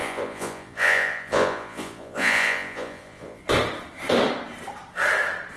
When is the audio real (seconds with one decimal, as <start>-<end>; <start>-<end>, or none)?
3.4-5.6